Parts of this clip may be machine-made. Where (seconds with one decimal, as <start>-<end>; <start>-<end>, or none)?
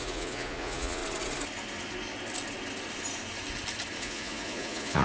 0.0-1.0; 4.0-5.0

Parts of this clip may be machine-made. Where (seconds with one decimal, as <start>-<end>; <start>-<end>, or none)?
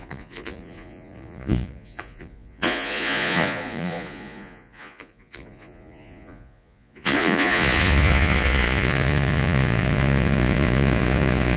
0.0-11.6